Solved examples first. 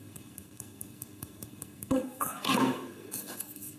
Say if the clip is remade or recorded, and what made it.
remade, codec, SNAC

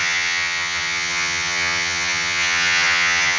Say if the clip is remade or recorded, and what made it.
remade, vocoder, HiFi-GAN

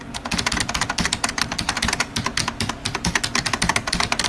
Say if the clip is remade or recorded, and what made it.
recorded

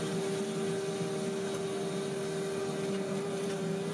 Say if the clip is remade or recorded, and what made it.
recorded